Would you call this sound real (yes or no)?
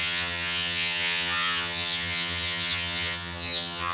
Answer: no